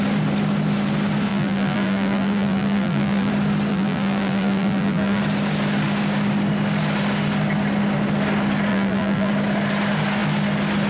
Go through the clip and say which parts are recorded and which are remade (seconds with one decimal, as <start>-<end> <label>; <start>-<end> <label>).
0.0-1.3 recorded; 1.3-3.3 remade; 3.3-3.7 recorded; 3.7-5.2 remade; 5.2-8.7 recorded; 8.7-9.3 remade; 9.3-10.9 recorded